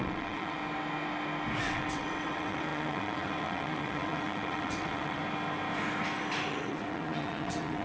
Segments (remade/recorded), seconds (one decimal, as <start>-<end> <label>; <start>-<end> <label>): 0.0-0.6 remade; 0.6-1.6 recorded; 1.6-5.2 remade; 5.2-6.5 recorded; 6.5-7.8 remade